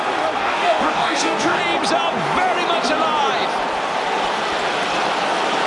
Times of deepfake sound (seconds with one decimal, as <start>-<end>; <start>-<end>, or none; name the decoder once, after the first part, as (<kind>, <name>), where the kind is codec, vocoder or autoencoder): 0.4-1.6 (codec, DAC)